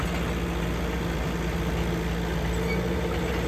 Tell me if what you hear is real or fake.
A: real